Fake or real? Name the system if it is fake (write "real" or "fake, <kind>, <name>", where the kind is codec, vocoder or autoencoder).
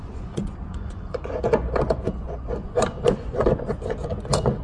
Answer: fake, vocoder, Vocos